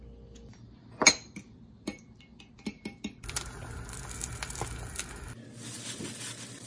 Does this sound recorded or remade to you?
recorded